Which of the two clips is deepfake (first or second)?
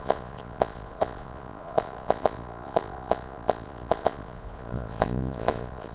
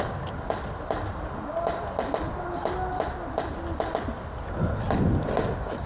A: first